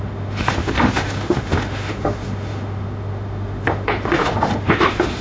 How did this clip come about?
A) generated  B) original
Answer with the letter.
A